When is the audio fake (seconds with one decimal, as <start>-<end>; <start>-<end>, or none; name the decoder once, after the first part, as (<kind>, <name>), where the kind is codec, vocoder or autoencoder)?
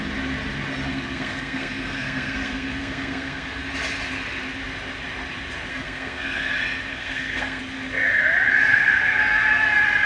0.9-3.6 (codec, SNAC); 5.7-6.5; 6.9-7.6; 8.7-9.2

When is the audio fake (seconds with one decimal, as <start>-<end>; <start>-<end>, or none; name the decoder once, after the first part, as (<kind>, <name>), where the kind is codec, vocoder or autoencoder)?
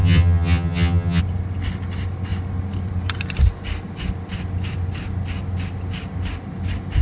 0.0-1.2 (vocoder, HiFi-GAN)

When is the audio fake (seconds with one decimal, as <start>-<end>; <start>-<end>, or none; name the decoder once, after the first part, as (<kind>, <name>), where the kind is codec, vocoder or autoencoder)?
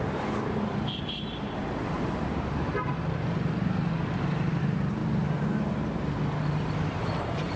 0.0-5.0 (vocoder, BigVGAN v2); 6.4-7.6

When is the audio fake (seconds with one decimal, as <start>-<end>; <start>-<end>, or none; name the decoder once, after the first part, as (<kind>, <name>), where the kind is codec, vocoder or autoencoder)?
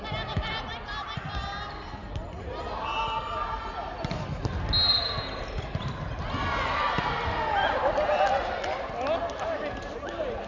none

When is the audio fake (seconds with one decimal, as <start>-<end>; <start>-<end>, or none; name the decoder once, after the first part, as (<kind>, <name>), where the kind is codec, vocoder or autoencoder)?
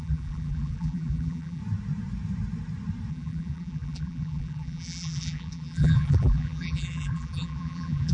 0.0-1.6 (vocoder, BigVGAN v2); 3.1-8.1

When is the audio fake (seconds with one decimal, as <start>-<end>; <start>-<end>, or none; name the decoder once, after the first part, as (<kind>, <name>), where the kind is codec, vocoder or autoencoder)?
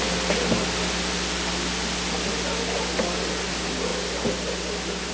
none